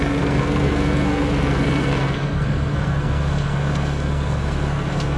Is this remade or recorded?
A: remade